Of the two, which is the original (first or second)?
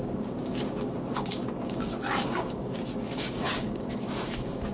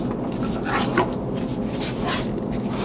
second